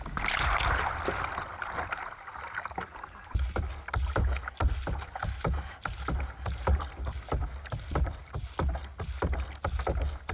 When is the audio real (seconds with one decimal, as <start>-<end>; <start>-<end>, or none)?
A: 0.0-10.3

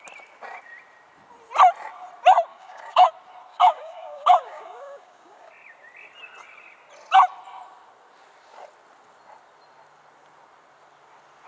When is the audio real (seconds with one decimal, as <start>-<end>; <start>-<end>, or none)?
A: 0.0-2.5; 3.1-3.5; 5.5-11.5

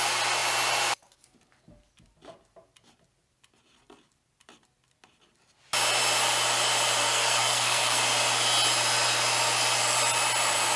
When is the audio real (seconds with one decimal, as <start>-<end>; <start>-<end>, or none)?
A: 0.0-7.0; 8.0-10.8

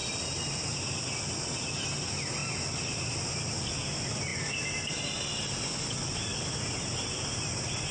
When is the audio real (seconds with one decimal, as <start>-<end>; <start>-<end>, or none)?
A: 0.0-7.9

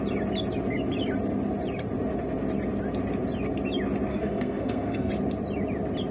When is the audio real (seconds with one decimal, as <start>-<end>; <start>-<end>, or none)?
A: 0.0-4.1; 5.1-6.1

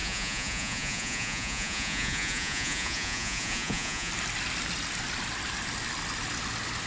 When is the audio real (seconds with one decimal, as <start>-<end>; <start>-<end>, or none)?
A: 4.1-6.9

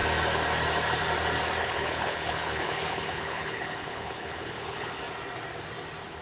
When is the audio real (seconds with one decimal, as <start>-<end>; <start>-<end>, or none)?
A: 0.0-1.6; 5.0-6.2

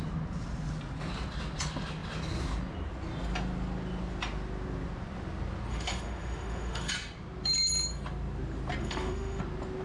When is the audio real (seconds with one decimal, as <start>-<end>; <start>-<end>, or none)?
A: 0.0-5.7; 6.9-8.8; 9.4-9.8